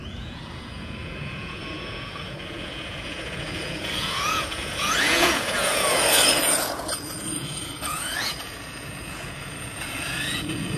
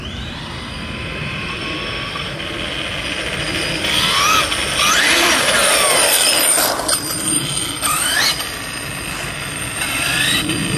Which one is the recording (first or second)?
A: second